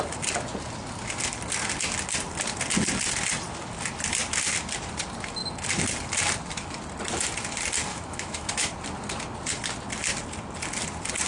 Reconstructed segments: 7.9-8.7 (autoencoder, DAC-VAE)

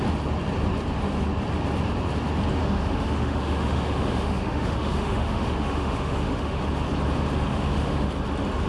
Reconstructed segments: 2.6-6.6 (autoencoder, DAC-VAE); 7.5-8.1

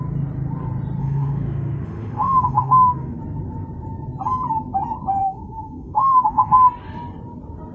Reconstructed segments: 1.0-3.2 (autoencoder, DAC-VAE); 5.2-6.5

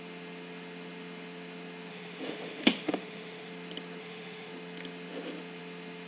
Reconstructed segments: 1.9-3.5 (autoencoder, DAC-VAE); 4.0-4.5